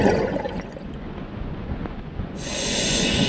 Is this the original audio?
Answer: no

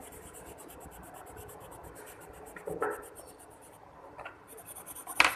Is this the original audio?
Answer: no